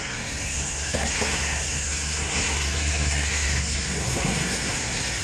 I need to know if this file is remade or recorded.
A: remade